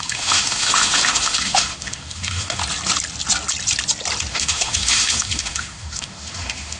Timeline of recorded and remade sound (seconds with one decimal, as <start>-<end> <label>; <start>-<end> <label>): 0.0-2.6 remade; 2.6-4.3 recorded; 4.3-6.8 remade